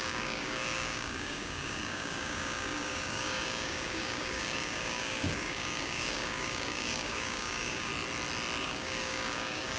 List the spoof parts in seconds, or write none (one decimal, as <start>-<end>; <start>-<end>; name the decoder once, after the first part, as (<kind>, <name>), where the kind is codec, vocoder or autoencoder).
0.0-7.9 (codec, DAC); 8.6-9.8